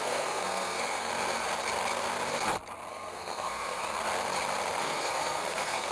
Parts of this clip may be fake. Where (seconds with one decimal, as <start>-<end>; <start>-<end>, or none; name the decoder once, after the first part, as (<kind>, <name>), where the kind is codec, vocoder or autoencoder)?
0.0-1.1 (codec, SNAC); 2.9-3.8; 4.8-5.9